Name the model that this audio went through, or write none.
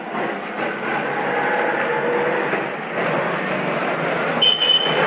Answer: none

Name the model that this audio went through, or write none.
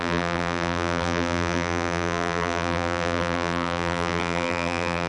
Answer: vocoder, BigVGAN v2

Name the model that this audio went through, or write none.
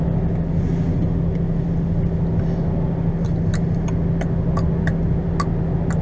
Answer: none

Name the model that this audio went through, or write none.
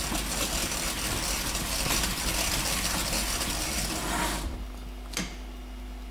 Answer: none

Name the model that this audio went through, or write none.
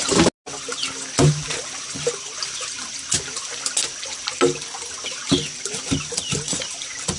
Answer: none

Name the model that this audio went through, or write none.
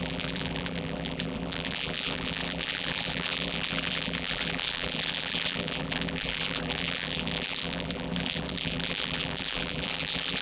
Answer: vocoder, BigVGAN v2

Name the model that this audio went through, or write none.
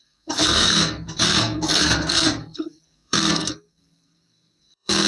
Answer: codec, SNAC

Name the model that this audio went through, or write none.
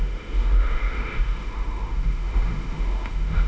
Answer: autoencoder, DAC-VAE